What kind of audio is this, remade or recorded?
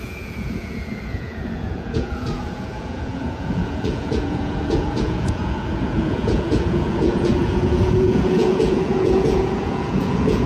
remade